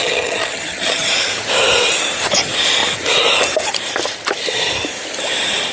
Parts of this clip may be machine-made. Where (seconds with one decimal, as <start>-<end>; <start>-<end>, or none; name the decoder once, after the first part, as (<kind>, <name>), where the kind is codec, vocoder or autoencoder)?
0.0-1.1 (vocoder, HiFi-GAN)